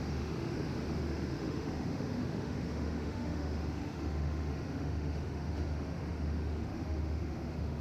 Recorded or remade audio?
remade